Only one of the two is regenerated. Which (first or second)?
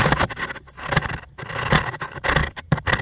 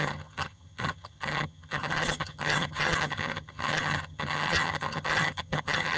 second